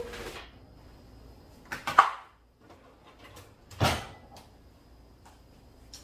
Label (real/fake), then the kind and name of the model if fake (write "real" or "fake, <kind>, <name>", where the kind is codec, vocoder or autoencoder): real